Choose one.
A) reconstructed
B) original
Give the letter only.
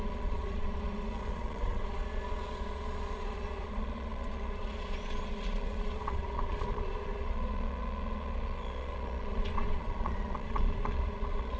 A